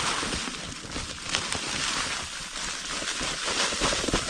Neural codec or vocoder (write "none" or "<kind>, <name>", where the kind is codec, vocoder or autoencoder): none